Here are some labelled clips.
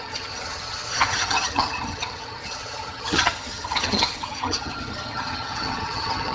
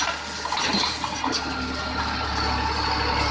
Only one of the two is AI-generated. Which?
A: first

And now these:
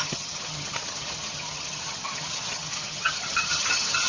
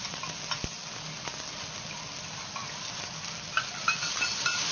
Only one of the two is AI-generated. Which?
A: first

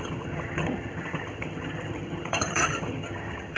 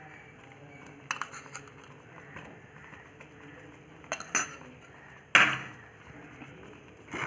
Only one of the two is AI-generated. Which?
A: first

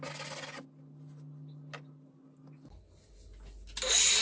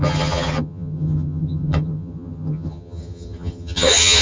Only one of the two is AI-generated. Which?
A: second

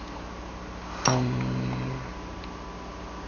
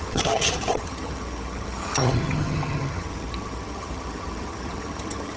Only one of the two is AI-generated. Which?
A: second